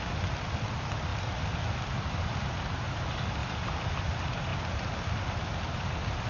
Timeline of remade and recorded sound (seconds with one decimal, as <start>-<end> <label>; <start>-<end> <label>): 0.0-6.3 recorded